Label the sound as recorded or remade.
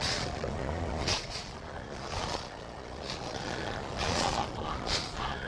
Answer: remade